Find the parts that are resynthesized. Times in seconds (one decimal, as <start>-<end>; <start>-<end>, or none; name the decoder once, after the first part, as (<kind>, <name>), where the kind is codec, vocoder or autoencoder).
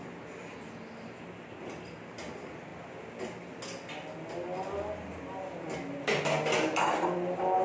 none